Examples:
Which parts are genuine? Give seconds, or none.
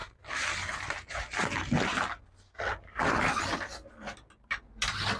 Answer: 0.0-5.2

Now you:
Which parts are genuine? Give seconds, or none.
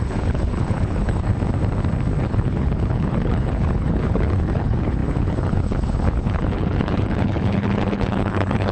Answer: 1.3-2.2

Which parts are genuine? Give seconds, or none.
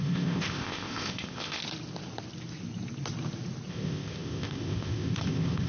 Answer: 1.6-3.7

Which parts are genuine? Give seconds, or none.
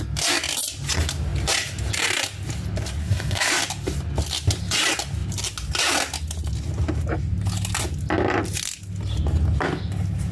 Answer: 0.0-3.0; 3.5-10.3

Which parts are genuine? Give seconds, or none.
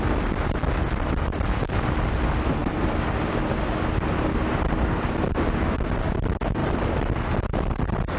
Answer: 0.0-8.2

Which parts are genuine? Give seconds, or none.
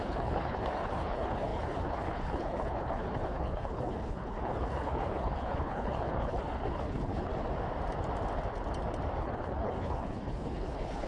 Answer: 7.3-9.2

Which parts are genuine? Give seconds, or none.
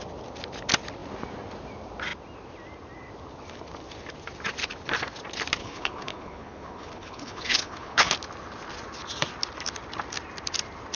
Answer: 0.0-5.6; 8.1-11.0